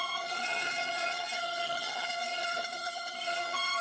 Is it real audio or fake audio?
fake